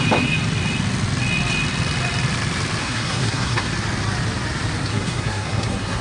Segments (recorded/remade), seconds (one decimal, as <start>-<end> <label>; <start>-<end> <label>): 0.0-2.8 recorded; 2.8-3.7 remade; 3.7-4.9 recorded; 4.9-6.0 remade